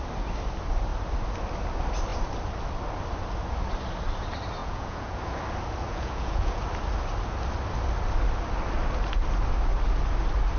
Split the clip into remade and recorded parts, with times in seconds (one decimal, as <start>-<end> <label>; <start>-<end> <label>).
0.0-4.6 recorded; 4.6-5.2 remade; 5.2-5.9 recorded; 5.9-6.6 remade; 6.6-10.6 recorded

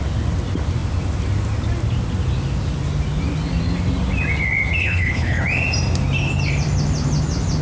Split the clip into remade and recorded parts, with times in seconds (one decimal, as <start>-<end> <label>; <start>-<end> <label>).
0.0-4.8 recorded; 4.8-5.4 remade; 5.4-7.6 recorded

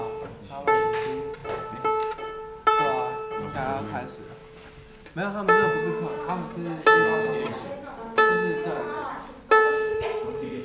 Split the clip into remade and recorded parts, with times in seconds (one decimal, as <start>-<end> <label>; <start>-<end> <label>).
0.0-9.9 recorded; 9.9-10.6 remade

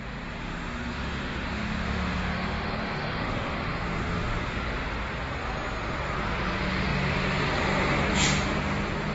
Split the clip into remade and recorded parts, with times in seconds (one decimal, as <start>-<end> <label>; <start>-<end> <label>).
0.0-0.4 recorded; 0.4-4.6 remade; 4.6-9.1 recorded

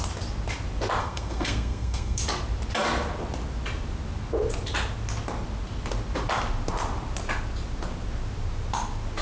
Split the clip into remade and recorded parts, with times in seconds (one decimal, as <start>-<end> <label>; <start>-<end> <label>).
0.0-1.0 recorded; 1.0-2.2 remade; 2.2-9.2 recorded

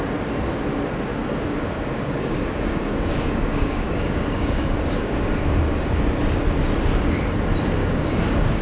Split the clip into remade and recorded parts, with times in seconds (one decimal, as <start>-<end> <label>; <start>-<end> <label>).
0.0-1.1 recorded; 1.1-5.2 remade; 5.2-7.8 recorded; 7.8-8.6 remade

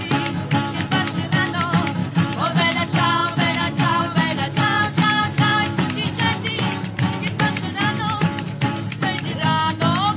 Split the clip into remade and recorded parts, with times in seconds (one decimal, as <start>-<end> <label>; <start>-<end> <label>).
0.0-2.0 recorded; 2.0-2.8 remade; 2.8-3.2 recorded; 3.2-4.0 remade; 4.0-6.0 recorded; 6.0-9.7 remade; 9.7-10.2 recorded

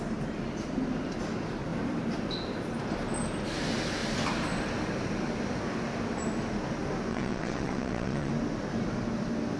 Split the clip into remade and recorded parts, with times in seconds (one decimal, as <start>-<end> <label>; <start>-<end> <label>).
0.0-7.1 recorded; 7.1-8.3 remade; 8.3-9.6 recorded